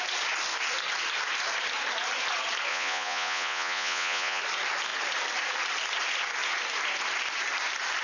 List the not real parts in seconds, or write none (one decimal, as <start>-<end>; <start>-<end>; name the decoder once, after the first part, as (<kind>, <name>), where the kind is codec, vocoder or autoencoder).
2.7-4.4 (vocoder, Vocos)